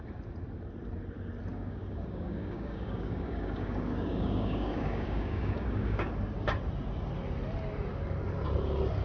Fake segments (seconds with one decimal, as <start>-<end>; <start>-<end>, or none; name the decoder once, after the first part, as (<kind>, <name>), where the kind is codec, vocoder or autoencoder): 1.5-6.1 (codec, DAC)